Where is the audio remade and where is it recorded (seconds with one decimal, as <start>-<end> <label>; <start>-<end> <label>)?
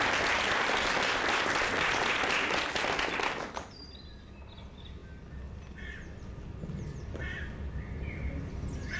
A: 0.0-9.0 recorded